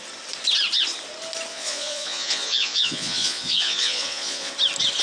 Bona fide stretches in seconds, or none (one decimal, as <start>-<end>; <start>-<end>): 0.0-1.5; 4.5-5.0